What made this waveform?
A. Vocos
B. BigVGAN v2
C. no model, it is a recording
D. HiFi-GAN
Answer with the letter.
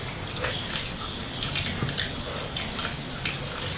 C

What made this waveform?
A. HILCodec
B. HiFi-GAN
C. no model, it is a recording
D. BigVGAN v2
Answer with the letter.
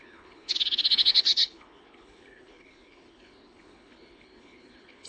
A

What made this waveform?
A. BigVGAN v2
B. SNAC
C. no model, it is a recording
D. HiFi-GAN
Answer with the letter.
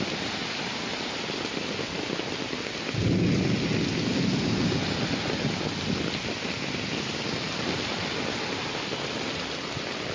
C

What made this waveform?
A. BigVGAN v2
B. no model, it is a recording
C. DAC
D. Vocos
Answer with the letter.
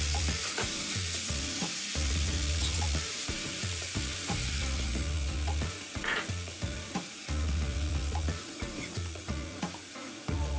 D